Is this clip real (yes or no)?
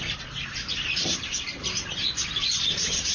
yes